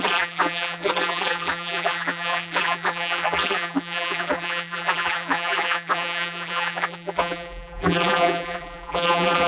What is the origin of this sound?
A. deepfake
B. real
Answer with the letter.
A